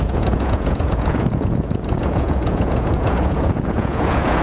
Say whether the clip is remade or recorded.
remade